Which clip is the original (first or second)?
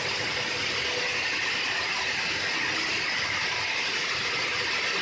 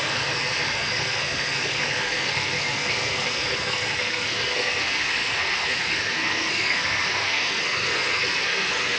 first